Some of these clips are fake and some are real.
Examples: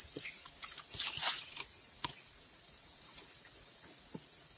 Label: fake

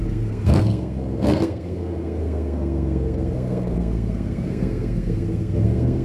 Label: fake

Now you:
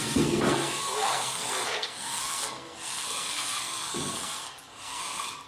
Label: fake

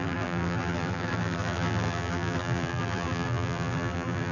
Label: fake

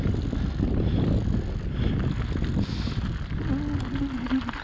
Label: real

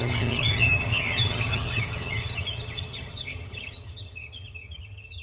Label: fake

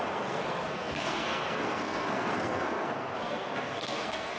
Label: fake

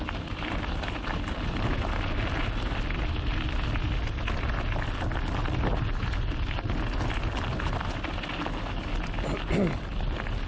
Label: real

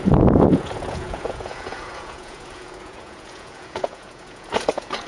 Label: fake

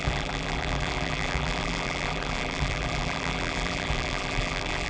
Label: fake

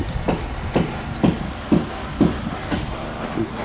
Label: real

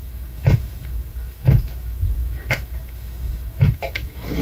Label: fake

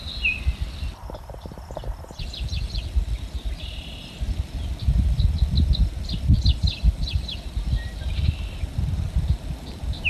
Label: fake